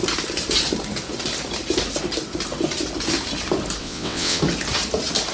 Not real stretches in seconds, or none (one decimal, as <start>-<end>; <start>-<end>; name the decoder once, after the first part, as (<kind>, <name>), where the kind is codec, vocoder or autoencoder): 3.8-4.4 (vocoder, WaveNeXt)